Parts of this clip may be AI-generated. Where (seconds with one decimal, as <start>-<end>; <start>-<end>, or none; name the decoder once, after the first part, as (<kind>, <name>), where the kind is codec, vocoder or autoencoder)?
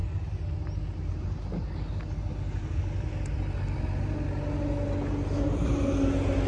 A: none